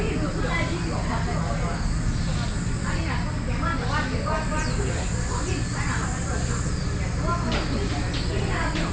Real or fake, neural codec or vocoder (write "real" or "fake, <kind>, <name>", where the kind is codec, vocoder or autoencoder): real